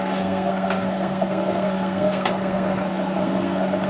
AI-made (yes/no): yes